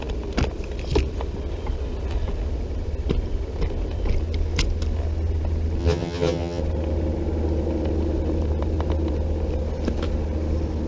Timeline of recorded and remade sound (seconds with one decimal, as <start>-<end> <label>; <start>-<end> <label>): 0.0-5.8 recorded; 5.8-6.6 remade; 6.6-10.9 recorded